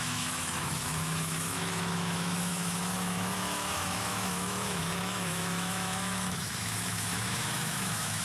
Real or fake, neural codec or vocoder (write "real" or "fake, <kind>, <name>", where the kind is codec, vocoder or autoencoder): fake, autoencoder, DAC-VAE